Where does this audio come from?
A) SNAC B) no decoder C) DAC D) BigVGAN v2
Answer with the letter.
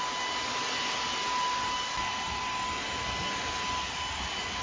B